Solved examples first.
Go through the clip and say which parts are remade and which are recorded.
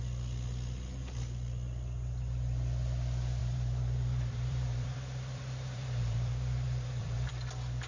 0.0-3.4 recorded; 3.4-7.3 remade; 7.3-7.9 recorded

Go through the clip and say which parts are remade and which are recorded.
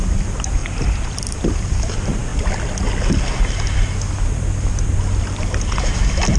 0.0-0.6 remade; 0.6-1.3 recorded; 1.3-2.3 remade; 2.3-6.4 recorded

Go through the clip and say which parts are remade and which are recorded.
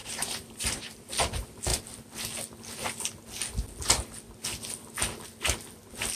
0.0-1.1 remade; 1.1-6.2 recorded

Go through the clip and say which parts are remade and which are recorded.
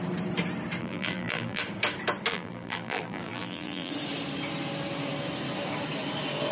0.0-0.8 recorded; 0.8-1.6 remade; 1.6-2.3 recorded; 2.3-3.9 remade; 3.9-6.5 recorded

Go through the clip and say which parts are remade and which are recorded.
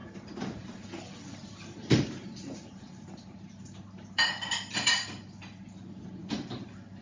0.0-6.2 recorded; 6.2-7.0 remade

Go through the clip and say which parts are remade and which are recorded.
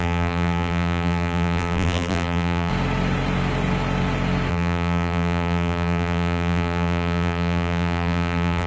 0.0-2.7 remade; 2.7-4.5 recorded; 4.5-8.7 remade